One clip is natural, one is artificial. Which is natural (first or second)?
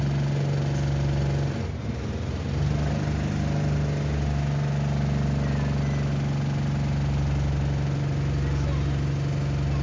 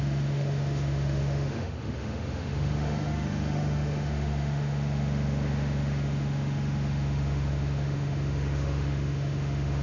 first